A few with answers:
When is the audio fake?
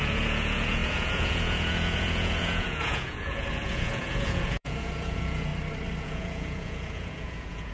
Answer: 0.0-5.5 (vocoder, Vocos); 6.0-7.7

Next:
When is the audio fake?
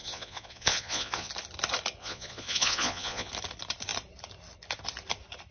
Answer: 0.0-1.3 (vocoder, Vocos); 2.0-3.3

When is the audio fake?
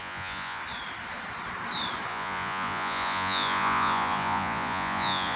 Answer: 0.0-0.6 (vocoder, Vocos); 2.1-5.4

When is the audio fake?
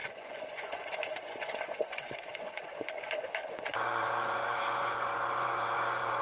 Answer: 0.0-6.2 (vocoder, Vocos)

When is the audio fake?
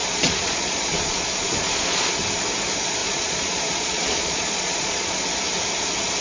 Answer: 0.0-2.2 (vocoder, Vocos); 3.0-5.2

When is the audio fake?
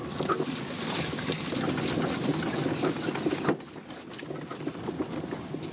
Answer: none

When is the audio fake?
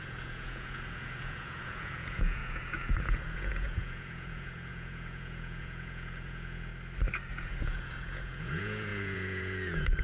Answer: 0.0-6.7 (vocoder, Vocos); 7.3-10.0